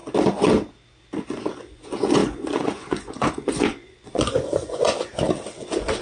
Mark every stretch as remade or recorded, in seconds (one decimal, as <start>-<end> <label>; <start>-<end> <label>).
0.0-1.6 recorded; 1.6-5.1 remade; 5.1-5.6 recorded; 5.6-6.0 remade